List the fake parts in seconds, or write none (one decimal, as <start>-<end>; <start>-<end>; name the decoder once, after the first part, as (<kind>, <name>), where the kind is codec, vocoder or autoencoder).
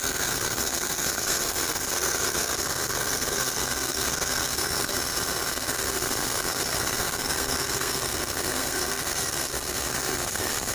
0.0-4.9 (codec, SNAC); 5.5-10.7